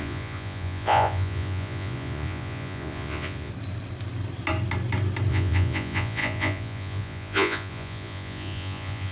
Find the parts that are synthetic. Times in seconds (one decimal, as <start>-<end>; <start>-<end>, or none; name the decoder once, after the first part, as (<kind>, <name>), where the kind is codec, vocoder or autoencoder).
0.0-3.5 (vocoder, Vocos); 5.3-9.1